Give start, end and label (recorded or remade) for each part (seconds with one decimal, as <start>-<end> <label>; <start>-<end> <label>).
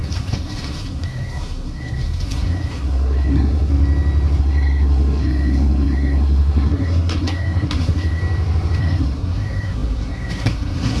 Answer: 0.0-3.7 remade; 3.7-4.4 recorded; 4.4-8.2 remade; 8.2-8.8 recorded; 8.8-11.0 remade